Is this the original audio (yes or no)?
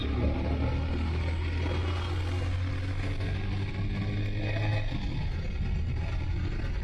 yes